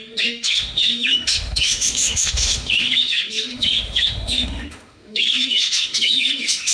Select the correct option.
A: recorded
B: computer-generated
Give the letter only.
B